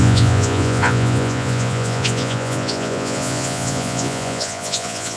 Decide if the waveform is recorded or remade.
remade